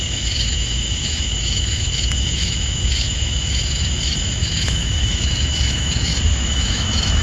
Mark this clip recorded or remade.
remade